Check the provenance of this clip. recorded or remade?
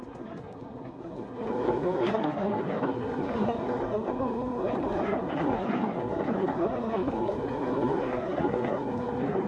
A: remade